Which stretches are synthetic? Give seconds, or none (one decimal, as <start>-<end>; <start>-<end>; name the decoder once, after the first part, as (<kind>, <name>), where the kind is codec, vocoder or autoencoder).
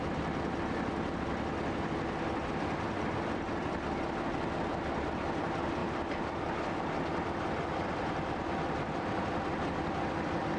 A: none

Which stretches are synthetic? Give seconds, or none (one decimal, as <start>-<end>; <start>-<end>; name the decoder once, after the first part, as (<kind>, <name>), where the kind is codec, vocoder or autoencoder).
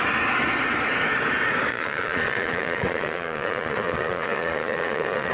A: 1.7-5.3 (vocoder, Vocos)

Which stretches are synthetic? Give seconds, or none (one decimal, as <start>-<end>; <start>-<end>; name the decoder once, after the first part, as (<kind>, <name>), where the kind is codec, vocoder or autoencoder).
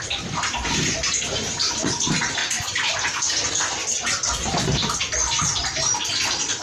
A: 2.4-3.2 (vocoder, BigVGAN v2)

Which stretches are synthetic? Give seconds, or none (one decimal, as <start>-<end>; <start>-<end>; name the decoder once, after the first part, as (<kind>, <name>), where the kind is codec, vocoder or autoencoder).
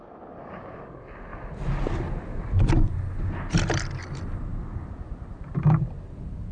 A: none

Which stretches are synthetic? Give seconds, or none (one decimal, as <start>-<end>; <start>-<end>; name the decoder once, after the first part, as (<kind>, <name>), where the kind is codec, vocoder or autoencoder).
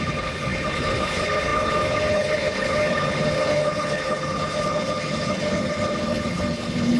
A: 0.0-7.0 (codec, HILCodec)